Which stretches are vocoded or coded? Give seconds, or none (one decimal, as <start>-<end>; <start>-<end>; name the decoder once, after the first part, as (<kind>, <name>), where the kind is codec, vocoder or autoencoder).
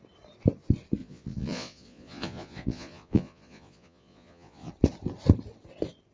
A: 1.0-4.7 (vocoder, Vocos)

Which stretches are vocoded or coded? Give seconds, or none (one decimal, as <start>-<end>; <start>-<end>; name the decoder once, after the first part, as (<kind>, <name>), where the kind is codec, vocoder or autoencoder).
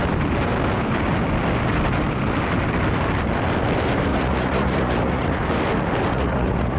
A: 4.1-5.4 (vocoder, Vocos); 6.1-6.8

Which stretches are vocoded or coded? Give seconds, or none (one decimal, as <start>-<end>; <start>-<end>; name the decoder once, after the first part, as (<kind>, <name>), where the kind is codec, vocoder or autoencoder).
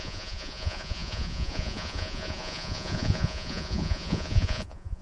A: 0.0-5.0 (vocoder, Vocos)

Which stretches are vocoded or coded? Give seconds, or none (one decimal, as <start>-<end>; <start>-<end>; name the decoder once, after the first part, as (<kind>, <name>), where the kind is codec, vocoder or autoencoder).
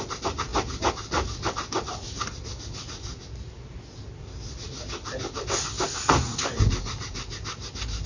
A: none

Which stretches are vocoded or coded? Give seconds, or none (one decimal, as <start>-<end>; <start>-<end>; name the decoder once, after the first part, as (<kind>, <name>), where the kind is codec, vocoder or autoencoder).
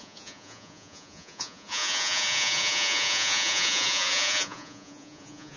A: 0.0-5.6 (vocoder, Vocos)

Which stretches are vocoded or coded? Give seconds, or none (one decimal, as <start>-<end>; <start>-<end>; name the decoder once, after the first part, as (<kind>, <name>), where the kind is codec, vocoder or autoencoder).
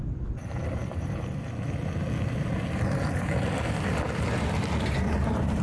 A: none